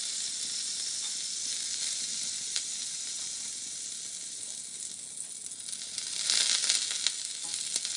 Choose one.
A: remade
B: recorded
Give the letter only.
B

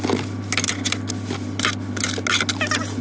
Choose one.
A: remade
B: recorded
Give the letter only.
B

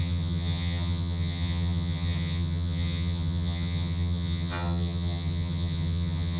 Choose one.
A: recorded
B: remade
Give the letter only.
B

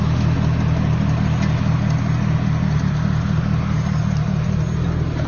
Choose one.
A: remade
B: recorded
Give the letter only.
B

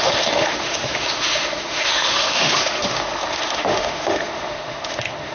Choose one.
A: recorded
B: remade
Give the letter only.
B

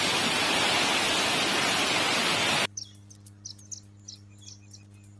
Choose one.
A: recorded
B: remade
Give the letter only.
A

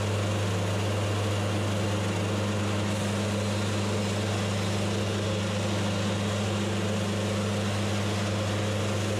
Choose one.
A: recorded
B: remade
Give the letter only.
A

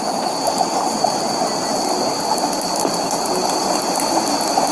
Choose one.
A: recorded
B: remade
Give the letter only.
A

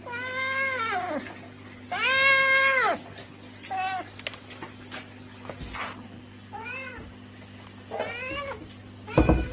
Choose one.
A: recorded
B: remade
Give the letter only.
A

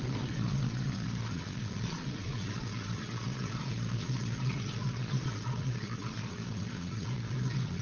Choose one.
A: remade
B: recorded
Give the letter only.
A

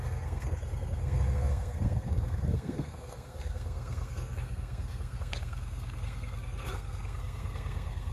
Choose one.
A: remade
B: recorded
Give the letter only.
A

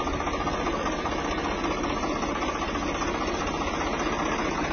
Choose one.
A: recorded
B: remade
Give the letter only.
A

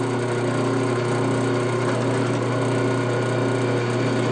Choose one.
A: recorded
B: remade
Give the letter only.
A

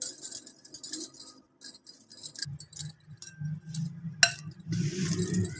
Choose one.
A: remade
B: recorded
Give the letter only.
B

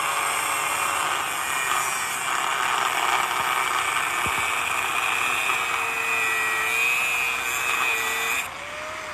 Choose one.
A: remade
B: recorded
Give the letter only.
B